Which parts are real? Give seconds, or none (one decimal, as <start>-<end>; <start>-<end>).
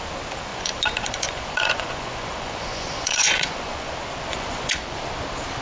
0.0-0.5; 3.9-4.3; 5.0-5.6